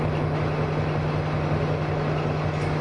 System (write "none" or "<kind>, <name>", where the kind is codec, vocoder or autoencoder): none